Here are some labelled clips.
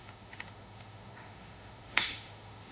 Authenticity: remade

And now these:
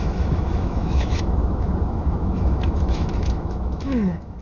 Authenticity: remade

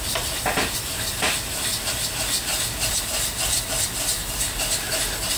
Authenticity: recorded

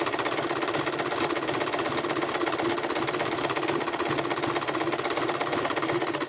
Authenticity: recorded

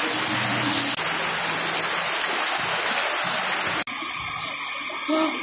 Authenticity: recorded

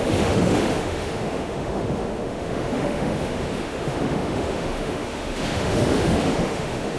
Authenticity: remade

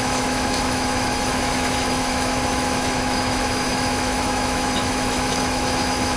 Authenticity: remade